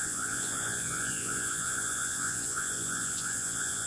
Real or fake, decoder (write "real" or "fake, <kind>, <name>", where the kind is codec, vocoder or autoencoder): fake, vocoder, Vocos